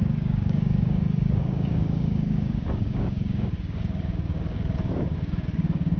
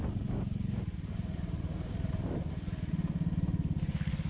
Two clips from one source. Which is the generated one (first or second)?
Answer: first